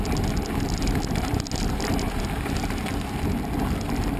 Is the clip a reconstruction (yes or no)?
no